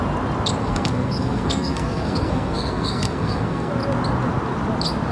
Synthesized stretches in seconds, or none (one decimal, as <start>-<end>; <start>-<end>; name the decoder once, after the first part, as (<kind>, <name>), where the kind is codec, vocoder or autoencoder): 0.6-3.7 (codec, SNAC)